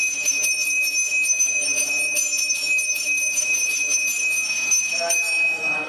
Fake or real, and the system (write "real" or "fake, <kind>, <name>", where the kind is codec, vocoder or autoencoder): fake, autoencoder, DAC-VAE